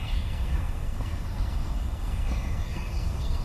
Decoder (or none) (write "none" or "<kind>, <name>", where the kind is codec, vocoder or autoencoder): codec, SNAC